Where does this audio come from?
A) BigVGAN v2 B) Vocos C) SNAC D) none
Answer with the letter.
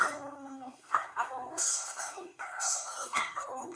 C